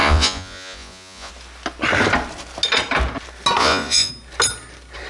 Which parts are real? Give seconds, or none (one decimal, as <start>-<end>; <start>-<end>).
1.3-3.6; 4.1-5.1